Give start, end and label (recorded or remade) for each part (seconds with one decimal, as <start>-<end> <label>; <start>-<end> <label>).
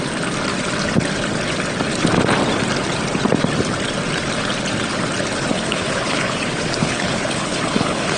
0.0-5.5 recorded; 5.5-8.2 remade